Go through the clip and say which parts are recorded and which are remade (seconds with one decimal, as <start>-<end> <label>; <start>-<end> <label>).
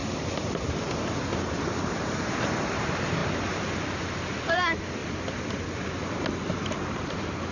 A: 0.0-1.0 recorded; 1.0-3.2 remade; 3.2-4.0 recorded; 4.0-5.0 remade; 5.0-6.5 recorded; 6.5-7.5 remade